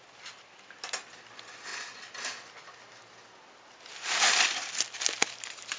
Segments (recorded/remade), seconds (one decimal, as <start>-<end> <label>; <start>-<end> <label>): 0.0-5.8 recorded